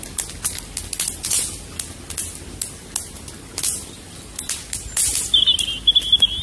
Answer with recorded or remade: recorded